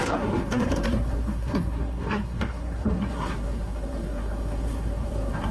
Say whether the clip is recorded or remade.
remade